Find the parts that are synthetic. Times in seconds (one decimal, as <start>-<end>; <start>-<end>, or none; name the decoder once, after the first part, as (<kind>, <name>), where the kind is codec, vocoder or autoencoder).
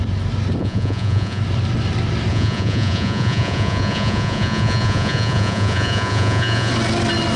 0.6-1.4 (vocoder, Vocos); 2.3-6.7